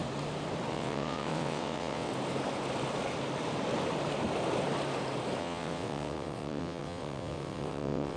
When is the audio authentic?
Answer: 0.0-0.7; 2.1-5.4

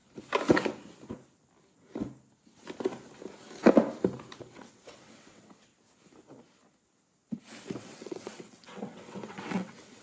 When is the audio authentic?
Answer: 0.0-4.4; 5.7-7.8

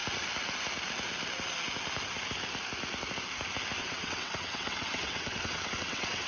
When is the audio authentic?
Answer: 0.0-3.8

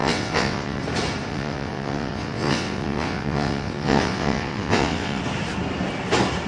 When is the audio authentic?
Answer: 0.8-1.3; 5.2-6.5

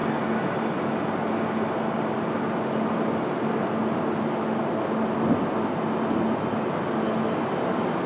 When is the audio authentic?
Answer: 0.0-8.1